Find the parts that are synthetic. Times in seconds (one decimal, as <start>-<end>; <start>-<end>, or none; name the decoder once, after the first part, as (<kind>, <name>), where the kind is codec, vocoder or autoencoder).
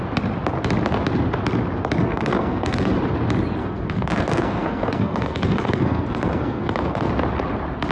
2.0-2.9 (codec, SNAC); 3.6-7.1